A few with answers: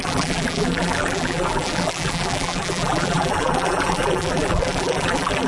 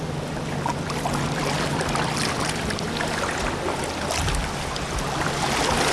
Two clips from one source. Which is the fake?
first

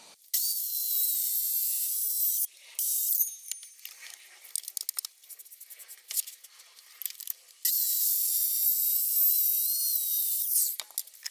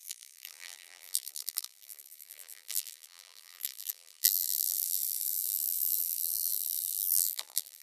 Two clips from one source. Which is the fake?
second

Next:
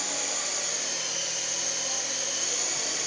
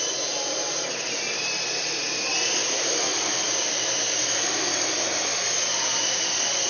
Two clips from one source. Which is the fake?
second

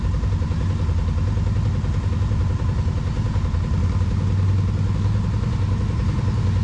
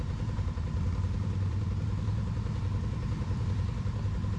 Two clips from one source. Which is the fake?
second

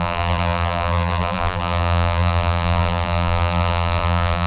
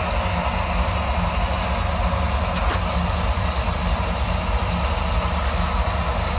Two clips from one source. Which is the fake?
first